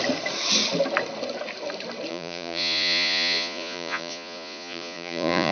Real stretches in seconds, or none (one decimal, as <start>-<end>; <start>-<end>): 0.0-2.1